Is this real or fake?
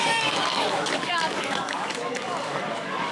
fake